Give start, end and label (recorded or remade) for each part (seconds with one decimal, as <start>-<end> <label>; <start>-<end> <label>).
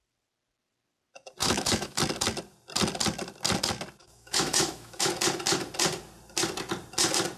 0.0-1.4 recorded; 1.4-2.0 remade; 2.0-4.0 recorded; 4.0-5.1 remade; 5.1-7.4 recorded